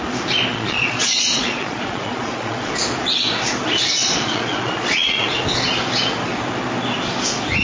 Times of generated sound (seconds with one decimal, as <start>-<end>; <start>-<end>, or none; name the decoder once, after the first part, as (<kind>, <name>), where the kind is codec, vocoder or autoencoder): 0.5-2.7 (vocoder, Vocos); 4.0-5.3